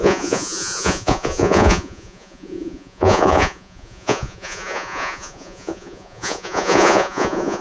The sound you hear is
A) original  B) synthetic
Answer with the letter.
B